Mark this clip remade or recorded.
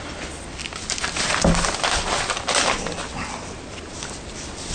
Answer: recorded